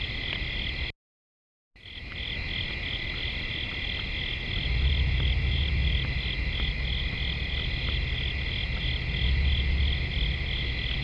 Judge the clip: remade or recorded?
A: recorded